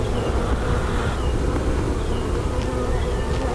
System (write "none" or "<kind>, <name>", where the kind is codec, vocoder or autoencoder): none